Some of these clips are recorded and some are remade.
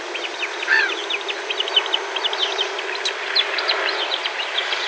recorded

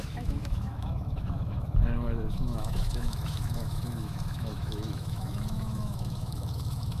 remade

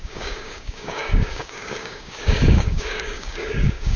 remade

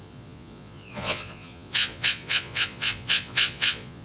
remade